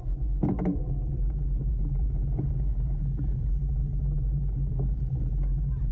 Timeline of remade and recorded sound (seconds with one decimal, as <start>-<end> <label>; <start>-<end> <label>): 0.0-5.9 recorded